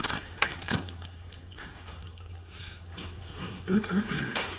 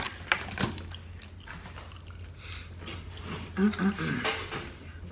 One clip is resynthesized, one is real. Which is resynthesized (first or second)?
first